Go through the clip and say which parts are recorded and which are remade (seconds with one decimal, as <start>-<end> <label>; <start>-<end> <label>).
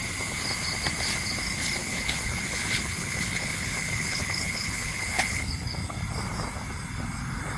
0.0-1.8 recorded; 1.8-5.5 remade; 5.5-7.6 recorded